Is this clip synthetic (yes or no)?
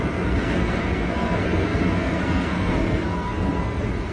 yes